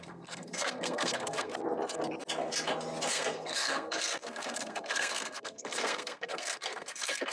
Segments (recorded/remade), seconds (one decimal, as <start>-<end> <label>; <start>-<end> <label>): 0.0-1.5 remade; 1.5-3.1 recorded; 3.1-7.3 remade